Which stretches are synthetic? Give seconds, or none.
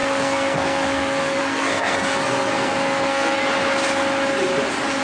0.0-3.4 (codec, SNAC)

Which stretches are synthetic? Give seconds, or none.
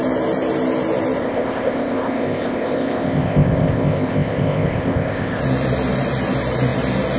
1.2-5.4 (codec, ZipCodec)